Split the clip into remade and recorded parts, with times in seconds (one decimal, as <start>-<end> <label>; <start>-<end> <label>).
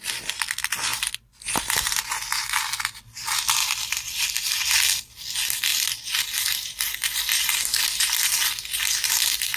0.0-9.6 recorded